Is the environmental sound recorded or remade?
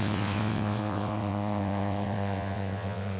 remade